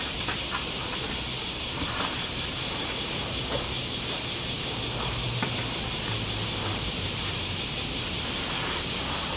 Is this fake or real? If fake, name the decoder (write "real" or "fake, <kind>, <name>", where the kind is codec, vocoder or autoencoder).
fake, vocoder, BigVGAN v2